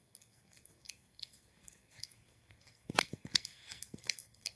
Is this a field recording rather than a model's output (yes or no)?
no